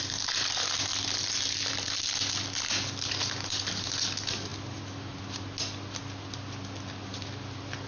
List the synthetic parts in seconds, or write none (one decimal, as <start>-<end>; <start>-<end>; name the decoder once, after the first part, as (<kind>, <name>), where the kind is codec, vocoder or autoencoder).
none